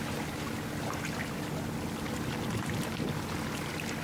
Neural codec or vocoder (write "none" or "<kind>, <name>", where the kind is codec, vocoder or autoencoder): none